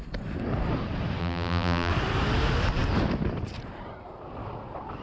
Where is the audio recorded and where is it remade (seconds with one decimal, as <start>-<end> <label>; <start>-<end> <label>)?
0.0-1.2 recorded; 1.2-1.9 remade; 1.9-5.0 recorded